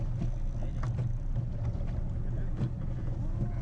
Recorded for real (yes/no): yes